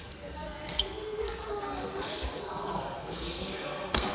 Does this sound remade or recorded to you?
remade